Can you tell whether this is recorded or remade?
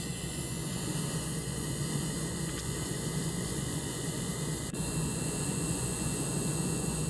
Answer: remade